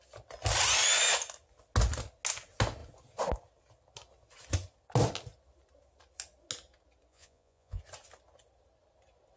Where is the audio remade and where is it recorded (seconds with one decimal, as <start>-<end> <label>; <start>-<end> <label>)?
0.0-7.1 recorded; 7.1-7.8 remade; 7.8-9.4 recorded